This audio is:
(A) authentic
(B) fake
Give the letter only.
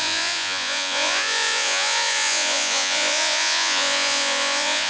B